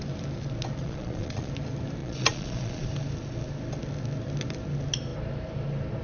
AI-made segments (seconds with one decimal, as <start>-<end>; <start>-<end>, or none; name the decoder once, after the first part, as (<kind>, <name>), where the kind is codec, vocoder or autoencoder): 0.8-1.5 (vocoder, Vocos); 2.0-2.9